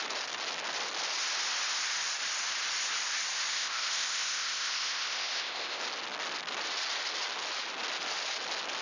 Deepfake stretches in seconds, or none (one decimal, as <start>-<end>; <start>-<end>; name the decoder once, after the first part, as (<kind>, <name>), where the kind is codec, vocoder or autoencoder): 3.5-5.8 (codec, ZipCodec)